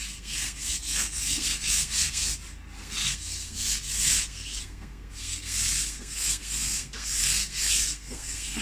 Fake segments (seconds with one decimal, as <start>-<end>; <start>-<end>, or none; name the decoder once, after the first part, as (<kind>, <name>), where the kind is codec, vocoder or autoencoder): 0.0-2.3 (codec, SNAC); 2.8-8.6